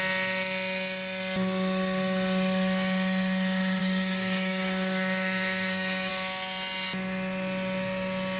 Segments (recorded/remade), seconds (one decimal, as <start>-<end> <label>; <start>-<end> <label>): 0.0-3.8 recorded; 3.8-6.1 remade; 6.1-8.4 recorded